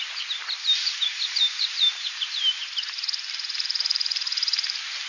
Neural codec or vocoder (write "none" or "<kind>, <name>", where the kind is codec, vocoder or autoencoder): vocoder, BigVGAN v2